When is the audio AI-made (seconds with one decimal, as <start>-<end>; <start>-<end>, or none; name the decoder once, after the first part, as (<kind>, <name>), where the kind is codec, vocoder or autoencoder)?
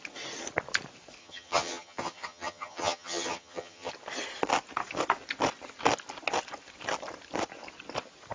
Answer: 1.2-3.9 (vocoder, HiFi-GAN)